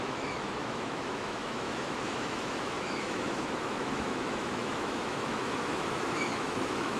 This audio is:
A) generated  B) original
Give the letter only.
A